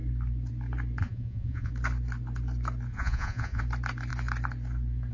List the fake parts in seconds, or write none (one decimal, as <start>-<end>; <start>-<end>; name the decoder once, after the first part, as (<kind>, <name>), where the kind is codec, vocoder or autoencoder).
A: 1.0-1.7 (vocoder, Vocos); 2.9-3.6